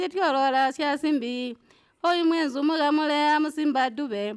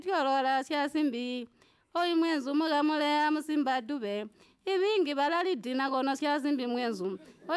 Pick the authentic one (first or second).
first